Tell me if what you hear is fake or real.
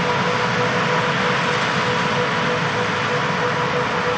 real